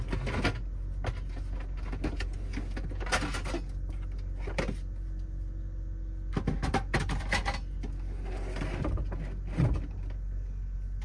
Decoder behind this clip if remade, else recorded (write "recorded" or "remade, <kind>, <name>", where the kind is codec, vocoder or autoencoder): recorded